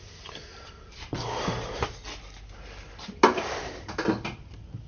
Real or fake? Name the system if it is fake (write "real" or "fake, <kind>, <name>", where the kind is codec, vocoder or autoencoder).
real